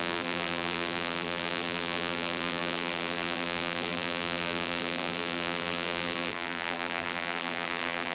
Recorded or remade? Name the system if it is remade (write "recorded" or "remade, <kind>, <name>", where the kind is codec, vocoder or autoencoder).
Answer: remade, vocoder, BigVGAN v2